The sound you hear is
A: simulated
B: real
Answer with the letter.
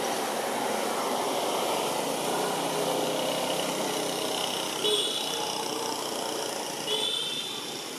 B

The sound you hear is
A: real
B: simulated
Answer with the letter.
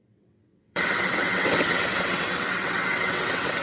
B